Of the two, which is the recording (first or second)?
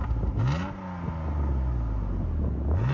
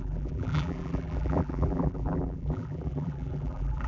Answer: first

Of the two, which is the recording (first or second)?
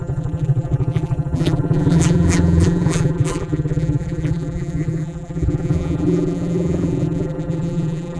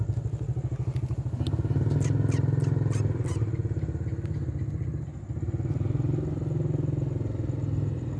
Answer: second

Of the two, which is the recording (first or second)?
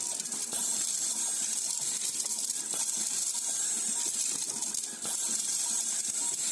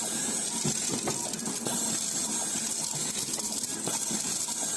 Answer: second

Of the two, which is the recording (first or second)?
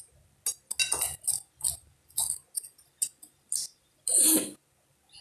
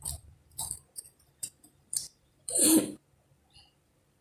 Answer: first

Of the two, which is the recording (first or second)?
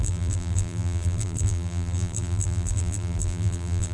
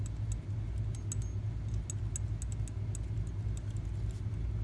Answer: second